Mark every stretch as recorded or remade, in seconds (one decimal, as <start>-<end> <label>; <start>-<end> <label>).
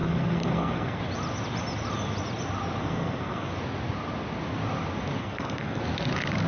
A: 0.0-1.0 remade; 1.0-2.8 recorded; 2.8-3.5 remade; 3.5-5.2 recorded; 5.2-5.8 remade; 5.8-6.5 recorded